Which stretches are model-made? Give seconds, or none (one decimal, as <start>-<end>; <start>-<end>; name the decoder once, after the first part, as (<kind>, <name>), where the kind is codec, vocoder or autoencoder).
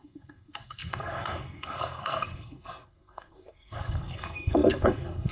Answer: 0.0-5.3 (codec, SNAC)